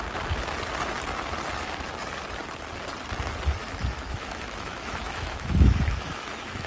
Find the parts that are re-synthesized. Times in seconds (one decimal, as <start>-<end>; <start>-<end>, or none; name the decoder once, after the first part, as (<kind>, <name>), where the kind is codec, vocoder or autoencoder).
3.6-6.7 (autoencoder, DAC-VAE)